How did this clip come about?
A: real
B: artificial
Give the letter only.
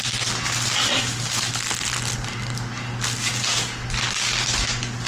A